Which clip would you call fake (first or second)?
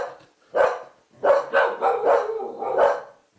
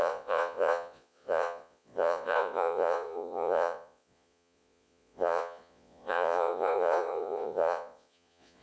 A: second